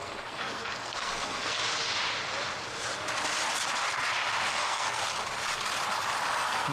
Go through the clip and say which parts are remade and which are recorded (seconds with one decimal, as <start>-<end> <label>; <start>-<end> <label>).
0.0-1.6 remade; 1.6-4.5 recorded; 4.5-5.0 remade; 5.0-6.3 recorded; 6.3-6.7 remade